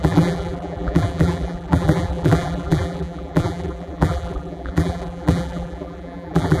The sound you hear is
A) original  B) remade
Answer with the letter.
B